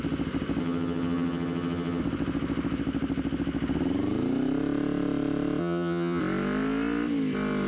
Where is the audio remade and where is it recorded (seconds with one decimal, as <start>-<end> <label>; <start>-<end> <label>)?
0.0-0.6 recorded; 0.6-2.0 remade; 2.0-5.6 recorded; 5.6-6.2 remade; 6.2-7.7 recorded